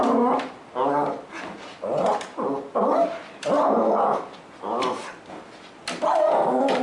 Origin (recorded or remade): recorded